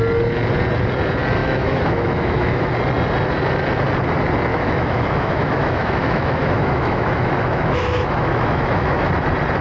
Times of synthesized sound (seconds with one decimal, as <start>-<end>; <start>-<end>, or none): 1.4-2.7; 4.5-9.1